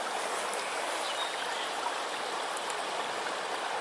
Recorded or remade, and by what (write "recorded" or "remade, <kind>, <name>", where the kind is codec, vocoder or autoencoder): recorded